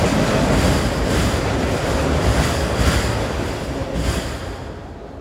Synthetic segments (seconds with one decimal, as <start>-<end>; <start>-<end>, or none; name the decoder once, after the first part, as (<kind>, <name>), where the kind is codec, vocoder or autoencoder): 2.3-2.8 (codec, DAC)